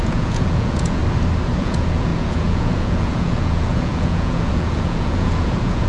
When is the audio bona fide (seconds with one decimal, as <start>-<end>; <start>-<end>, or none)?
1.0-1.6